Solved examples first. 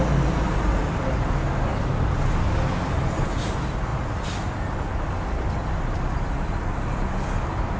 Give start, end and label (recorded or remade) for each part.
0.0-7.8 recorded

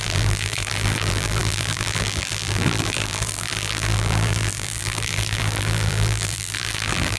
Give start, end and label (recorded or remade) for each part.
0.0-7.2 remade

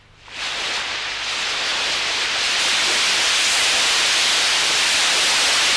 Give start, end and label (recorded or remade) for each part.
0.0-1.7 recorded; 1.7-5.2 remade; 5.2-5.8 recorded